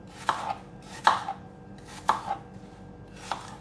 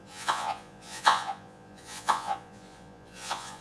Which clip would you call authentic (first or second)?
first